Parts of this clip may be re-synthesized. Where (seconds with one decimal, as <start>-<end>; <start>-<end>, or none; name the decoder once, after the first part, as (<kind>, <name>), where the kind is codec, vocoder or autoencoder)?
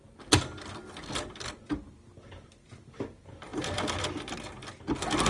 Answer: none